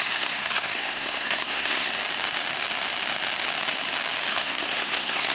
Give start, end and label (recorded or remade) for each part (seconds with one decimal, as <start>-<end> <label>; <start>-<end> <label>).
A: 0.0-1.9 remade; 1.9-4.3 recorded; 4.3-5.3 remade